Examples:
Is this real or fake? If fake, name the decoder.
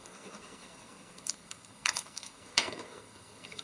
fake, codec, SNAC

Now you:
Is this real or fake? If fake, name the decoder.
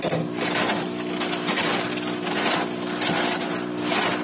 real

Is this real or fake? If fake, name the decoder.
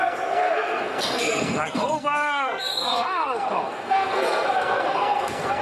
fake, codec, SNAC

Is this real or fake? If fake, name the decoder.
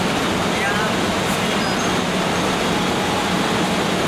real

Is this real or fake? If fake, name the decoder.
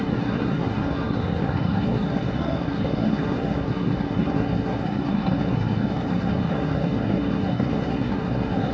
fake, codec, SNAC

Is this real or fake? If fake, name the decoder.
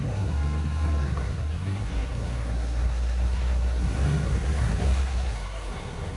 fake, codec, SNAC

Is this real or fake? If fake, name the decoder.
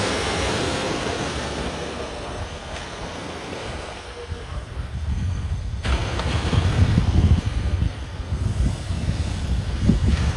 fake, codec, SNAC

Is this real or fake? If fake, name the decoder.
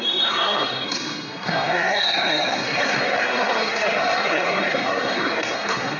fake, codec, SNAC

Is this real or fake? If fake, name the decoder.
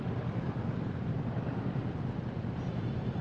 real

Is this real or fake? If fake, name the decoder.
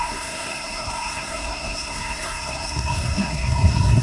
fake, codec, SNAC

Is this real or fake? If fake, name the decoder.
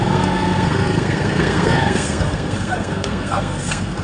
fake, codec, SNAC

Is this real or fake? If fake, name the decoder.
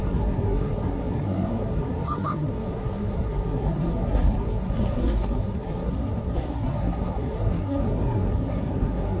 fake, codec, SNAC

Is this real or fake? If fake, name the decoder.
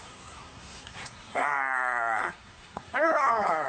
fake, codec, SNAC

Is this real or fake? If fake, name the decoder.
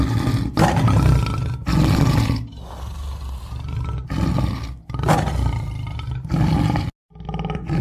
real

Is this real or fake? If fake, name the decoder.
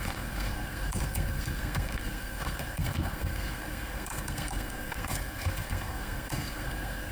fake, codec, SNAC